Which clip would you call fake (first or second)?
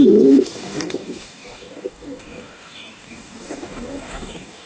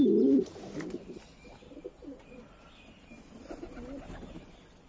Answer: first